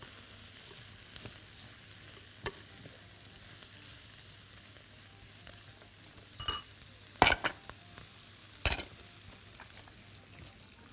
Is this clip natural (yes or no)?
yes